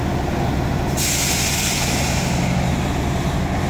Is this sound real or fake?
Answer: real